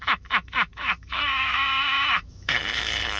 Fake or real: fake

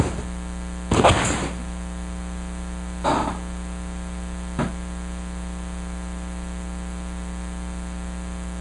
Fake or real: real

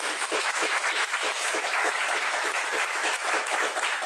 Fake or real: fake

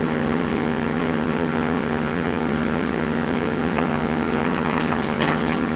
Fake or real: fake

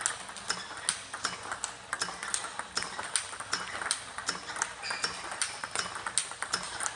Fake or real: real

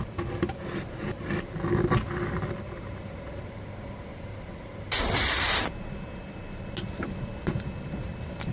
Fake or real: real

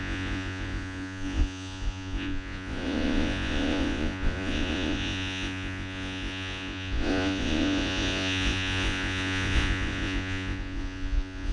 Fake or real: fake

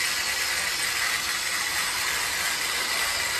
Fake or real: real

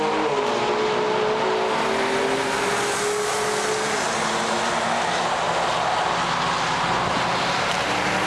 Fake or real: real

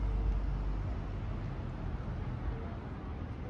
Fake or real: real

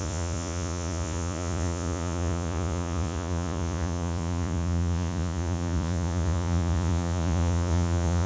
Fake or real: fake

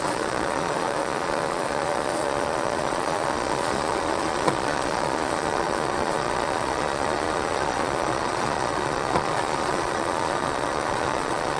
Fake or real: fake